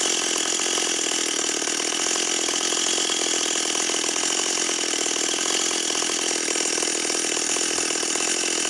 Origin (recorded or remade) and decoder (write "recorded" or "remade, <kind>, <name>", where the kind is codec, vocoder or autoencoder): recorded